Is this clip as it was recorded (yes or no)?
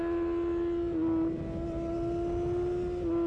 yes